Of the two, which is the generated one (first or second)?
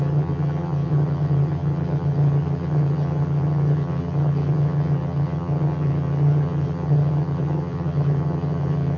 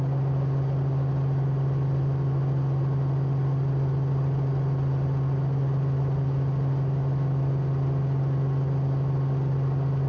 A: first